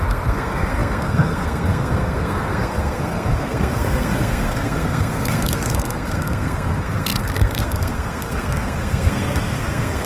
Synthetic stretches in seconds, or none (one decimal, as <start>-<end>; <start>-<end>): 0.0-10.1